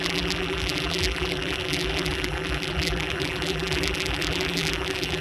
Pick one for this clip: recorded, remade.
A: remade